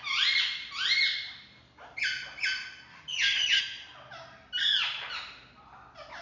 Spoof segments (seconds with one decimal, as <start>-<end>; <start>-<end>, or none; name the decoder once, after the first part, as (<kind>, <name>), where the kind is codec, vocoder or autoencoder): 2.9-3.6 (vocoder, HiFi-GAN)

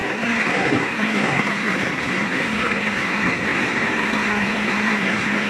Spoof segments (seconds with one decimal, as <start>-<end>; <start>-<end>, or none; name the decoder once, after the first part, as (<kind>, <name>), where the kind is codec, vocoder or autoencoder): 0.0-5.5 (codec, SNAC)